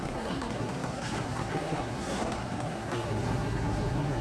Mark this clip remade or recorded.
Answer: remade